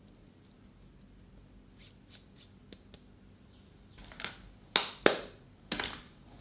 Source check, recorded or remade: recorded